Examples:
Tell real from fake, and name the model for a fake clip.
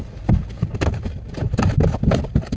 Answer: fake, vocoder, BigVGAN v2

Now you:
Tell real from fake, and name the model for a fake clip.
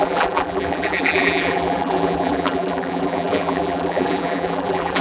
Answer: fake, vocoder, BigVGAN v2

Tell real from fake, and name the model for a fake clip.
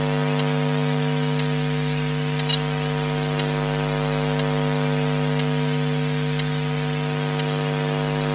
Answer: real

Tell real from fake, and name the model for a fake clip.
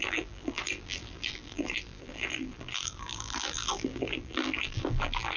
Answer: fake, vocoder, BigVGAN v2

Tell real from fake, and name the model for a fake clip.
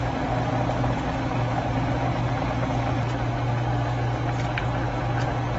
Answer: real